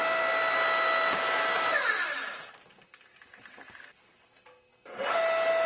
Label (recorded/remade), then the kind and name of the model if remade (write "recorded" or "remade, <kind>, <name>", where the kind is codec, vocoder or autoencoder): recorded